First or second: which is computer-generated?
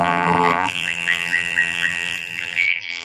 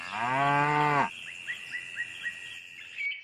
first